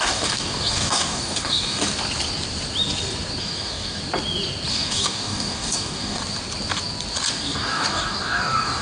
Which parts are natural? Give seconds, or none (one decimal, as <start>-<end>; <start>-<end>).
1.8-3.4; 4.0-4.7; 6.2-7.3